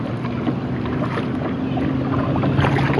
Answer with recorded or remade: recorded